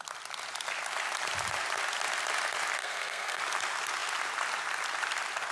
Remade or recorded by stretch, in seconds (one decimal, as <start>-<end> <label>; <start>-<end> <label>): 0.0-2.8 recorded; 2.8-3.4 remade; 3.4-5.5 recorded